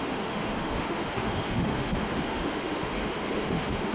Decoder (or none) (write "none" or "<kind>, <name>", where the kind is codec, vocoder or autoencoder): autoencoder, DAC-VAE